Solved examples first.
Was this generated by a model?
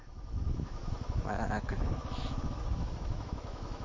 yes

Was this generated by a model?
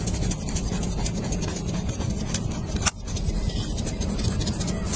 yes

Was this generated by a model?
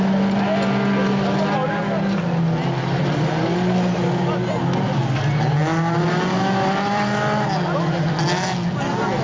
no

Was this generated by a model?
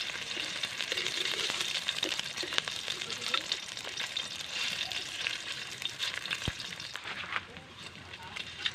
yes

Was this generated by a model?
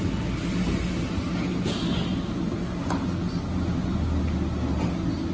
no